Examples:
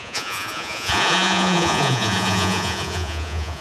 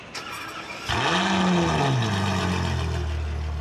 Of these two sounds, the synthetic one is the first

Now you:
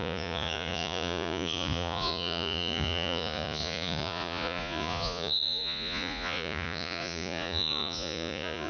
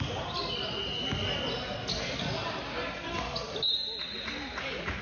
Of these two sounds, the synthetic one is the first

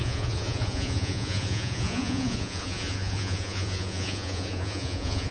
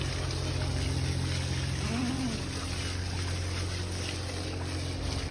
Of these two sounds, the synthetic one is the first